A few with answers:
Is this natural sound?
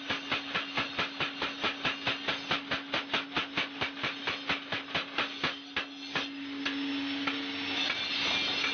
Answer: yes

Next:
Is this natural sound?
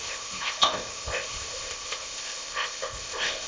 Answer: no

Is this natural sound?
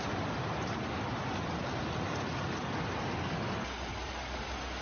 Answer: yes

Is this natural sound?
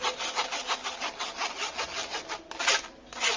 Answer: yes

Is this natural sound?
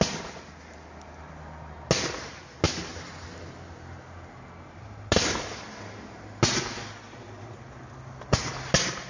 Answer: yes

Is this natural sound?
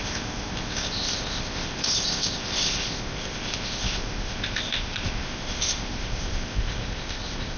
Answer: no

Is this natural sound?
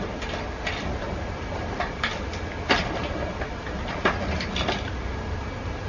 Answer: yes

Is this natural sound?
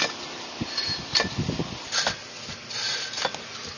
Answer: yes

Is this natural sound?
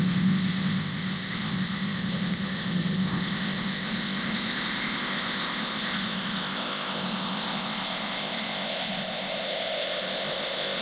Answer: no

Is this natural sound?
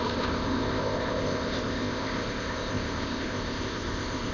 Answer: no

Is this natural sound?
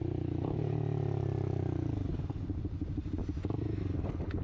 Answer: yes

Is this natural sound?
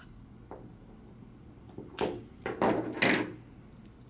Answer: yes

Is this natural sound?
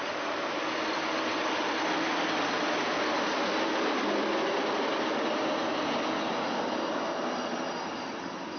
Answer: yes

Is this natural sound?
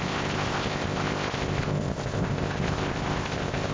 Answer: no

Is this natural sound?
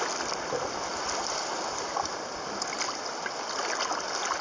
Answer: yes